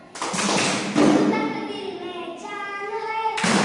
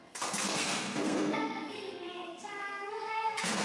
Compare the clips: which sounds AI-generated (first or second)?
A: second